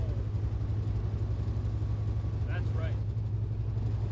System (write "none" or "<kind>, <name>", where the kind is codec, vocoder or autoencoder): none